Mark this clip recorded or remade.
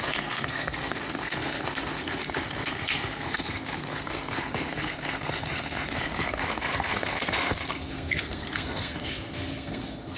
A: remade